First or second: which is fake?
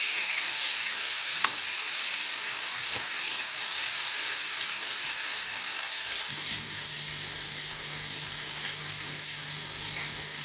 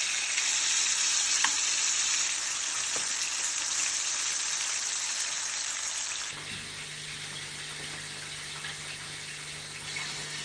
first